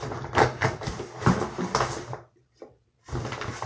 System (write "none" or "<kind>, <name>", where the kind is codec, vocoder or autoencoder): vocoder, BigVGAN v2